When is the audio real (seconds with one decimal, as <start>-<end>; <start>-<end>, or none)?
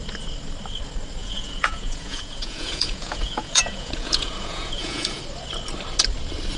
0.0-1.2; 5.2-6.6